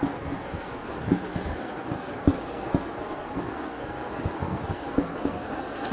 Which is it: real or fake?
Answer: fake